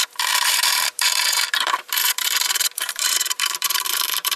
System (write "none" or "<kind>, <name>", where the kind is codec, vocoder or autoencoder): vocoder, BigVGAN v2